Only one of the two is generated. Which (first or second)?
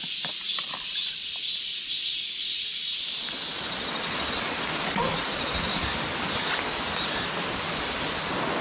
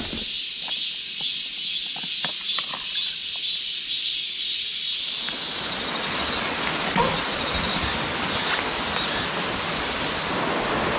first